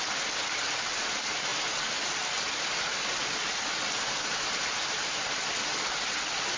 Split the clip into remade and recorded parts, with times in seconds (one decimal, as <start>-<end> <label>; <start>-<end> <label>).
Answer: 0.0-6.6 recorded